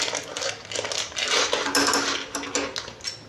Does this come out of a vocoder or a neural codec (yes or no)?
no